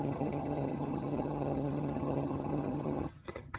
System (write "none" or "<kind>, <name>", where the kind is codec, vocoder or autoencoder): vocoder, HiFi-GAN